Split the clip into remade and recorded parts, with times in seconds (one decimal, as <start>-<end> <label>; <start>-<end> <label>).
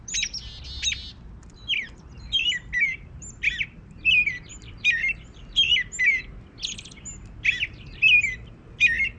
0.0-9.2 recorded